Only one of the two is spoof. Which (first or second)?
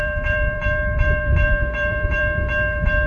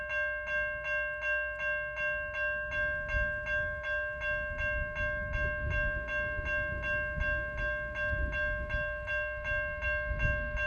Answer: first